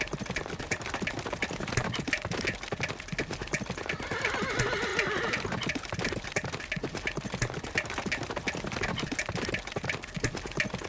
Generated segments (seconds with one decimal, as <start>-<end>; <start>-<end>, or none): none

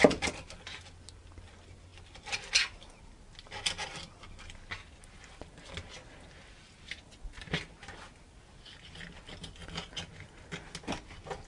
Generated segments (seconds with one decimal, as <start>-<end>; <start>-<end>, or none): none

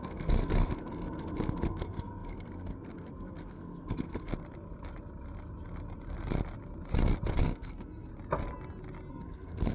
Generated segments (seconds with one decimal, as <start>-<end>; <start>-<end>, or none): 0.0-4.3; 7.4-8.1; 9.1-9.7

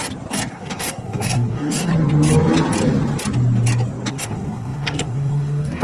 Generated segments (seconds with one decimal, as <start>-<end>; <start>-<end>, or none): 0.5-1.9; 4.1-5.8

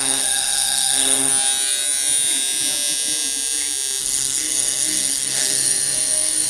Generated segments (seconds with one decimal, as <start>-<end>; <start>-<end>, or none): 0.0-1.3; 4.0-6.5

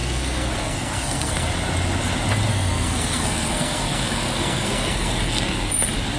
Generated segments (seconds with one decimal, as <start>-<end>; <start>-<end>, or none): 0.0-1.5; 2.5-5.7

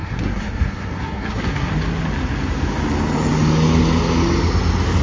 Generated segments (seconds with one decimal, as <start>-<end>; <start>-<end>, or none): 0.0-1.7